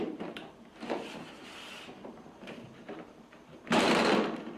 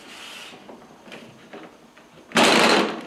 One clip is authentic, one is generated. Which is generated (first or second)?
first